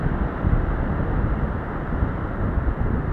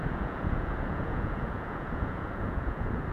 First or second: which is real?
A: first